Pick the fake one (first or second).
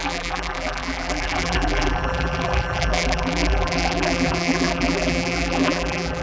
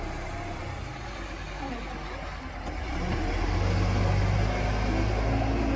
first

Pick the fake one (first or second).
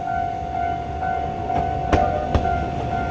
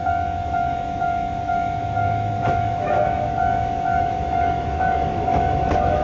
second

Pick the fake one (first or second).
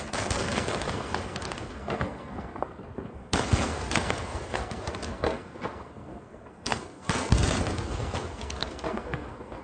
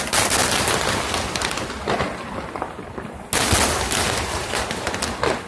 first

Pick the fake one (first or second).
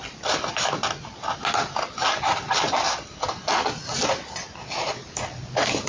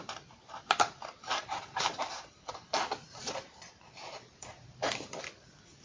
second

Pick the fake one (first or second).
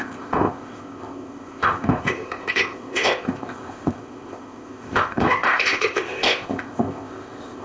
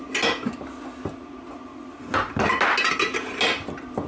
first